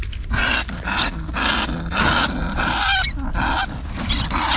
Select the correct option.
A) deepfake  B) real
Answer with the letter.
B